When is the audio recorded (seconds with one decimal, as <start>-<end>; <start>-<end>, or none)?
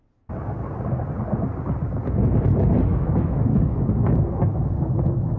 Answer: 0.0-2.9; 3.9-4.5